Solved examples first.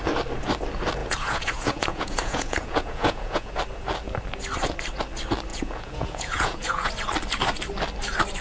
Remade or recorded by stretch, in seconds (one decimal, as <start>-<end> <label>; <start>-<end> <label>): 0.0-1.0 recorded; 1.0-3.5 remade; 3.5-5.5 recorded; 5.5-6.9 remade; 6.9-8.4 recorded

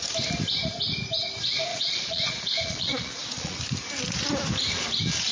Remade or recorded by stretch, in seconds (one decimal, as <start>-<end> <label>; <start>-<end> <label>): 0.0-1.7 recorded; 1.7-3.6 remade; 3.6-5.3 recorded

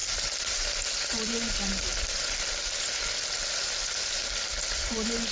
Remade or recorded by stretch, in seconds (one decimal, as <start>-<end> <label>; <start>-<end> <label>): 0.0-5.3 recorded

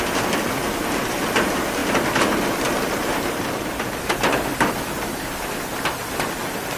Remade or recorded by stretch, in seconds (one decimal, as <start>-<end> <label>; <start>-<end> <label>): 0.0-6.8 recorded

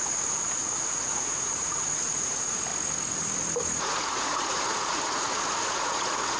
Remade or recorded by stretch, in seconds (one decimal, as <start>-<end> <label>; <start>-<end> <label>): 0.0-2.7 remade; 2.7-3.8 recorded; 3.8-6.4 remade